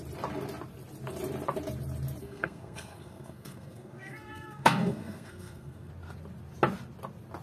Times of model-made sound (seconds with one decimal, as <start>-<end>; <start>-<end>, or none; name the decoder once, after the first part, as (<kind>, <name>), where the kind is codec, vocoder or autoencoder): 2.2-5.9 (codec, SNAC)